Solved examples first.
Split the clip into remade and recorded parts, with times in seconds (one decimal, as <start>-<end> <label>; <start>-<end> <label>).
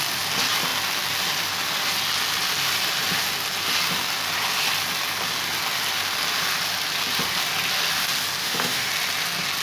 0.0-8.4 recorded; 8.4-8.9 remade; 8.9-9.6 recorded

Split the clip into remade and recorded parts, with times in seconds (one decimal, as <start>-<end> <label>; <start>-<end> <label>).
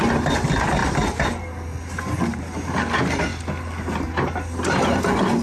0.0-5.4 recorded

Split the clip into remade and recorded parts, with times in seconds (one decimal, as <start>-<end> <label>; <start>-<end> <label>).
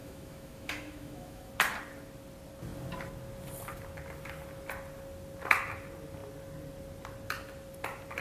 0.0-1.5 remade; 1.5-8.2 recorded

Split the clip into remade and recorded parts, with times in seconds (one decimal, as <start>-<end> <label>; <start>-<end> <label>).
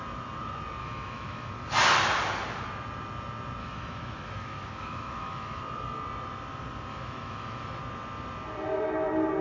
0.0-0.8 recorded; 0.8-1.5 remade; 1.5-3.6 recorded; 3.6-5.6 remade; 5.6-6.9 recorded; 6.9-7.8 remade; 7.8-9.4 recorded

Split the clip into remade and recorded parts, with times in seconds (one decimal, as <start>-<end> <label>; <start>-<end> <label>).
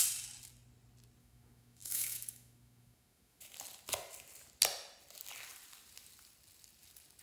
0.0-1.2 recorded; 1.2-3.4 remade; 3.4-7.2 recorded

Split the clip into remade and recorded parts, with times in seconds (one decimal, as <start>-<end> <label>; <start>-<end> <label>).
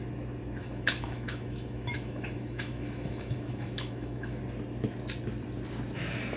0.0-0.6 recorded; 0.6-4.4 remade; 4.4-6.4 recorded